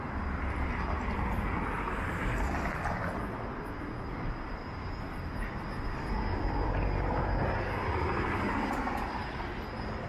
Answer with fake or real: real